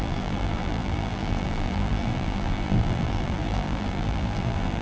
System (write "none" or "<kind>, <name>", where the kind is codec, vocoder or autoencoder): vocoder, BigVGAN v2